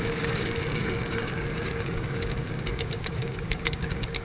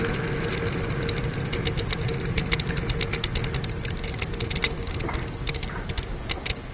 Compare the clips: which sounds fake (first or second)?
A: first